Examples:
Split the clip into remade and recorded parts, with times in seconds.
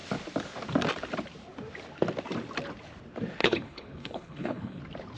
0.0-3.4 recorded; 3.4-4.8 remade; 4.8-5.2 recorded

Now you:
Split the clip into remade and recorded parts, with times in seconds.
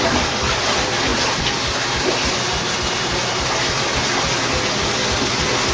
0.0-5.7 recorded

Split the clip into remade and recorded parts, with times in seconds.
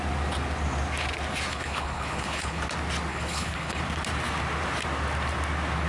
0.0-1.5 recorded; 1.5-2.6 remade; 2.6-3.1 recorded; 3.1-3.8 remade; 3.8-5.9 recorded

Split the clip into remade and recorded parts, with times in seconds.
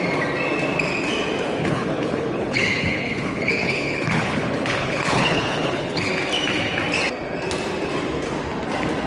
0.0-1.6 recorded; 1.6-6.1 remade; 6.1-9.1 recorded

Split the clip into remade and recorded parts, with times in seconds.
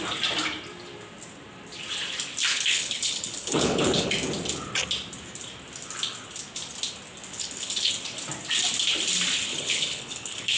0.0-2.5 recorded; 2.5-4.1 remade; 4.1-7.3 recorded; 7.3-7.9 remade; 7.9-9.5 recorded; 9.5-10.6 remade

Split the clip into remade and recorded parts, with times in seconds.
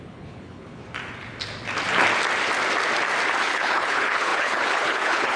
0.0-0.8 remade; 0.8-3.4 recorded; 3.4-5.4 remade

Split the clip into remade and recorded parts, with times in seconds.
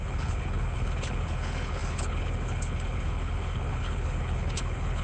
0.0-5.0 remade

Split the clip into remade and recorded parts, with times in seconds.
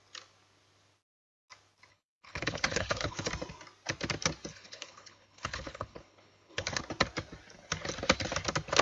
0.0-1.9 recorded; 1.9-3.3 remade; 3.3-4.5 recorded; 4.5-6.8 remade; 6.8-8.8 recorded